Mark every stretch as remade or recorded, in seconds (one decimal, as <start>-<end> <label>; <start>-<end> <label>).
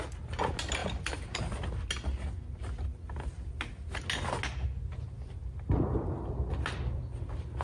0.0-0.8 recorded; 0.8-1.4 remade; 1.4-7.6 recorded